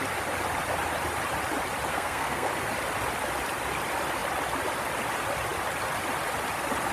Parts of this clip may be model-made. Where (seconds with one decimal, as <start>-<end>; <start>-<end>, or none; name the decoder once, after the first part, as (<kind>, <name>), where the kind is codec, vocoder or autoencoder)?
1.9-2.5 (codec, SNAC)